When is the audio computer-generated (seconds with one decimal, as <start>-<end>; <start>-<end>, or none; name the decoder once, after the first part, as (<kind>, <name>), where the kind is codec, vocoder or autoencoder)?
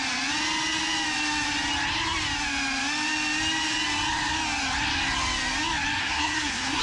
6.0-6.8 (codec, SNAC)